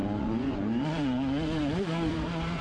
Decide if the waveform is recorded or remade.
remade